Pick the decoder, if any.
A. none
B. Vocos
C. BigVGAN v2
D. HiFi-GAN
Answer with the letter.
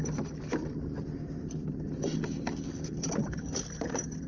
A